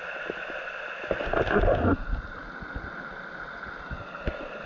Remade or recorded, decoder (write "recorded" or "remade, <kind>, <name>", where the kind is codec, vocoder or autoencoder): recorded